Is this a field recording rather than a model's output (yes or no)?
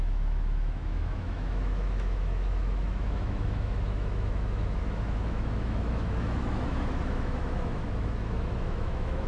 no